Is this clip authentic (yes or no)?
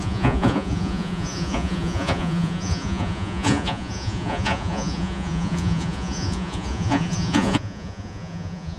no